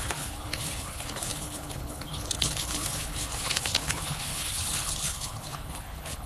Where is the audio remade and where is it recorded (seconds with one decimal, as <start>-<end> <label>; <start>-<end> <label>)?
0.0-6.3 remade